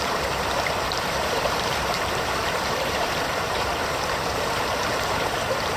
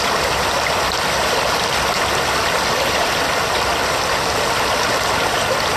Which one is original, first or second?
second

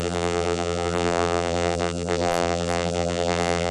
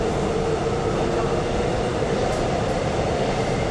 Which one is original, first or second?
second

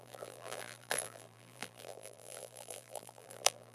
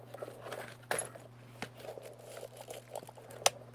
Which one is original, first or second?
second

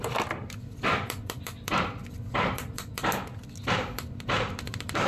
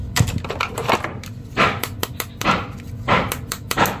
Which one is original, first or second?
second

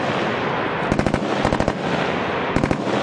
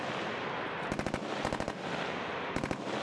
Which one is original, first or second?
first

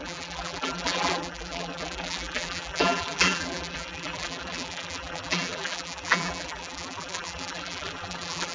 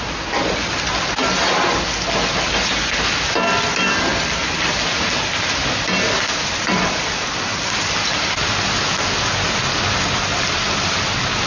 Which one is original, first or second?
second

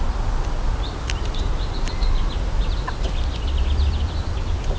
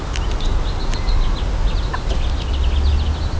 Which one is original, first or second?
second